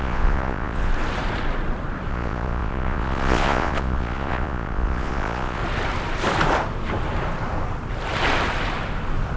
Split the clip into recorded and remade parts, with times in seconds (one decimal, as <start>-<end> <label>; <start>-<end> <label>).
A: 0.0-0.9 remade; 0.9-2.1 recorded; 2.1-5.6 remade; 5.6-9.4 recorded